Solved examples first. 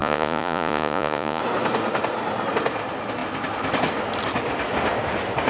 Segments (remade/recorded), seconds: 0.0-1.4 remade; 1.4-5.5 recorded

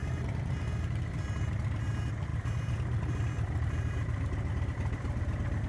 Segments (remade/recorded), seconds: 0.0-5.7 recorded

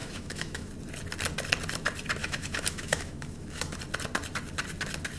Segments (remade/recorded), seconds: 0.0-0.7 remade; 0.7-2.2 recorded; 2.2-3.8 remade; 3.8-5.2 recorded

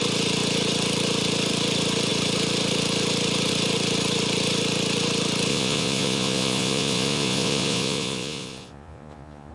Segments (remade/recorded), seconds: 0.0-5.5 recorded; 5.5-9.5 remade

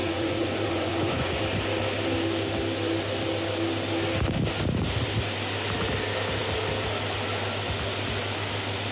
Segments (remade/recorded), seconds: 0.0-1.4 remade; 1.4-8.9 recorded

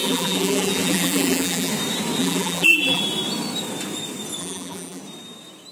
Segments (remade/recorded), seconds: 0.0-1.7 remade; 1.7-2.2 recorded; 2.2-3.0 remade; 3.0-4.4 recorded; 4.4-5.0 remade; 5.0-5.7 recorded

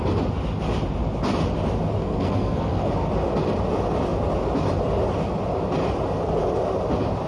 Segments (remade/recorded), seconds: 0.0-2.0 recorded; 2.0-2.9 remade; 2.9-7.3 recorded